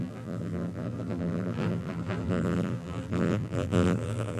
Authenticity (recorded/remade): remade